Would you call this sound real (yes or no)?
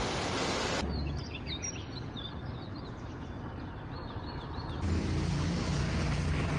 yes